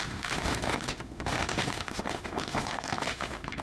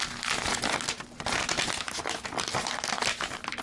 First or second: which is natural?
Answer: second